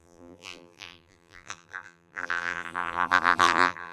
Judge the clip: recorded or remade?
remade